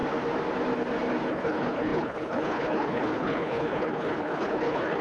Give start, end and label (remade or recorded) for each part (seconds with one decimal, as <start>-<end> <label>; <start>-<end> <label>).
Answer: 0.0-1.3 recorded; 1.3-5.0 remade